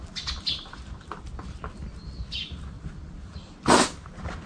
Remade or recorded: recorded